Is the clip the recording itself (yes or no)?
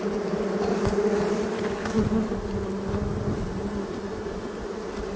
yes